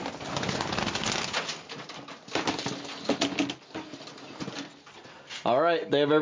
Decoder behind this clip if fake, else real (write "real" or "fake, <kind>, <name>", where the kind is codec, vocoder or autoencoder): real